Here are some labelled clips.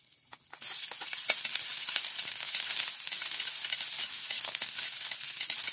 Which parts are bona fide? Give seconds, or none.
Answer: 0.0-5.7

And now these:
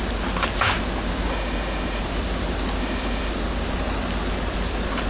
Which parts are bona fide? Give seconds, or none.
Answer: 0.0-1.3; 2.0-2.8; 3.3-5.1

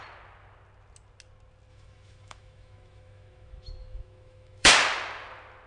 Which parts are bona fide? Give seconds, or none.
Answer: 0.0-1.7; 4.7-5.7

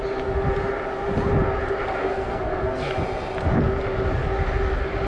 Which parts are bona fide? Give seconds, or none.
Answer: 0.0-2.0; 2.9-5.1

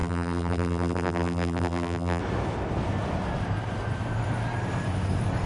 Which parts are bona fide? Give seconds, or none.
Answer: 2.2-5.5